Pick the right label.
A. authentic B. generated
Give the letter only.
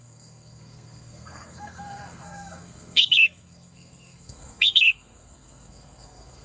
B